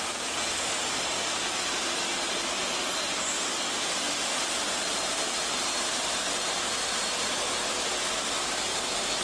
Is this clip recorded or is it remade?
recorded